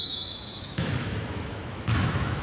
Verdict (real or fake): fake